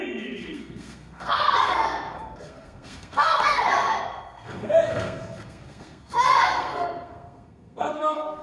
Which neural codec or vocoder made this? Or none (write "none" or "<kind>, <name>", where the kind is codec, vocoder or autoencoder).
codec, SNAC